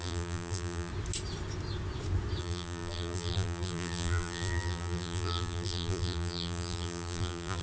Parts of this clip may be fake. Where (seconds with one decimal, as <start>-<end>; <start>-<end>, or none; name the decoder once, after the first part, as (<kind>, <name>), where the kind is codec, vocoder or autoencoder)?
0.0-0.9 (vocoder, BigVGAN v2); 2.4-7.6

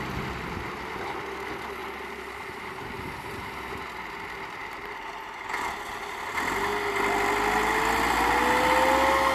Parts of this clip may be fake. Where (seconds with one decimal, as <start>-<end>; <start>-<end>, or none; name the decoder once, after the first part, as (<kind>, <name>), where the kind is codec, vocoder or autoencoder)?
1.8-4.1 (vocoder, BigVGAN v2); 4.6-6.1